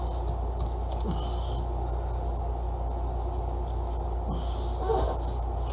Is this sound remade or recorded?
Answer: recorded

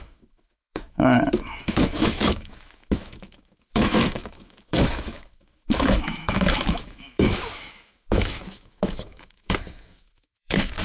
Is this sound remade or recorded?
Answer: remade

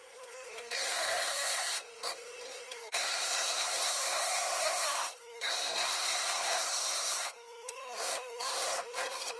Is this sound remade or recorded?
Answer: remade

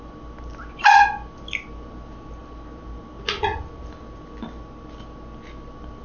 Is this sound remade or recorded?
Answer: recorded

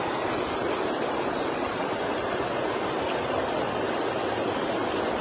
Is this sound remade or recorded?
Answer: recorded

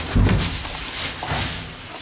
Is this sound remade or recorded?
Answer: recorded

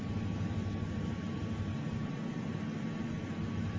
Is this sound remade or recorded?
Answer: remade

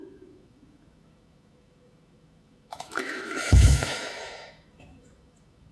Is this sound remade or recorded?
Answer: remade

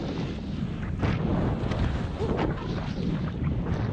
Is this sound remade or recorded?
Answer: recorded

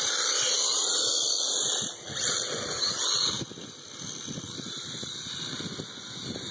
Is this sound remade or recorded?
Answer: recorded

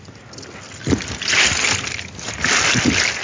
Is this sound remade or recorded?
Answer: recorded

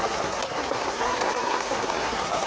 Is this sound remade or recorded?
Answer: remade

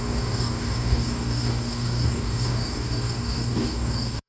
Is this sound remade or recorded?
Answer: remade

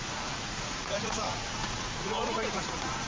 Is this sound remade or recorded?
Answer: remade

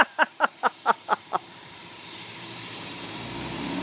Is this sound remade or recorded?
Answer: remade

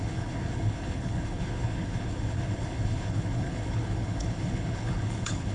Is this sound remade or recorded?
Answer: remade